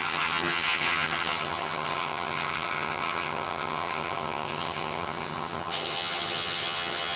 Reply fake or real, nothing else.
fake